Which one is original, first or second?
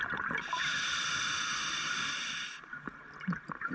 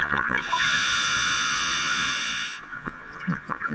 first